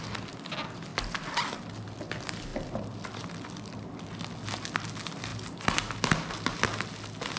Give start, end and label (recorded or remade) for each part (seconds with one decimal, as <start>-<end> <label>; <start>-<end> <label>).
0.0-7.4 recorded